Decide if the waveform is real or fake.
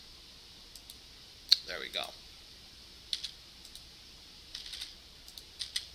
real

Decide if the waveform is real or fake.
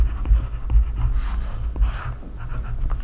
real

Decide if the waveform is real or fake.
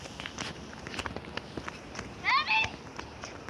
real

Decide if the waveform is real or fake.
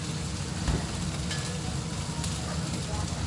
real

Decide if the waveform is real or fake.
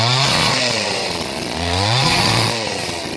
fake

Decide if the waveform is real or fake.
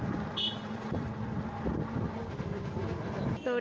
real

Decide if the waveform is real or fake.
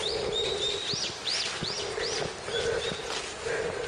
real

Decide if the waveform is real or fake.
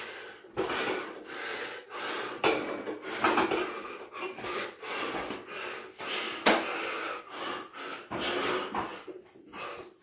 real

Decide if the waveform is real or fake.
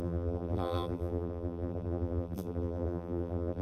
fake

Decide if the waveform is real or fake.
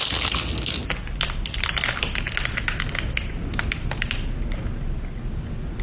real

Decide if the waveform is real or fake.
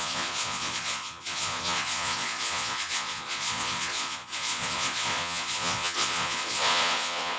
fake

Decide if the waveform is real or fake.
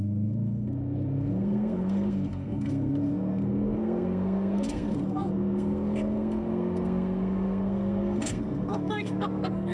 fake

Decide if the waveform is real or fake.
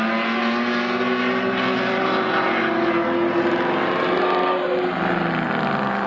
real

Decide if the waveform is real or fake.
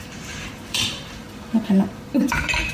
fake